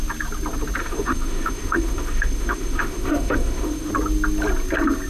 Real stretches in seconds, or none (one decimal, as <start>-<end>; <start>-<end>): 0.0-0.8; 3.9-5.1